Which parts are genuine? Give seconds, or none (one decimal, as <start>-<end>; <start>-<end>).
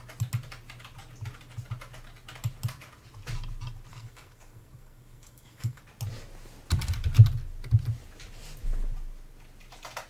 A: 0.0-3.9; 5.8-10.1